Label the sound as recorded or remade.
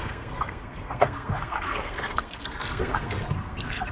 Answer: remade